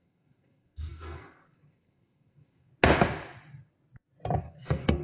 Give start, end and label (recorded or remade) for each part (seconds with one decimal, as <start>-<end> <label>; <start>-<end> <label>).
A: 0.0-2.7 remade; 2.7-4.4 recorded; 4.4-5.0 remade